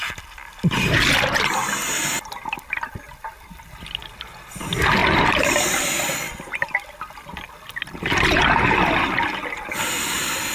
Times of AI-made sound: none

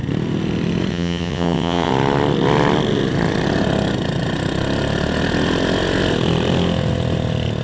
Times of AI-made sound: 0.9-1.9 (vocoder, WaveNeXt)

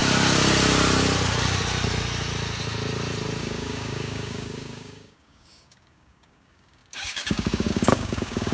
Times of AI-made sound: 3.4-8.5 (codec, DAC)

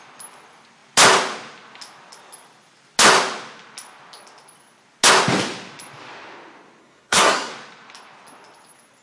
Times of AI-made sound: 6.8-7.5 (codec, SNAC)